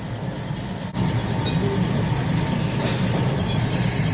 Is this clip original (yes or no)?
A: yes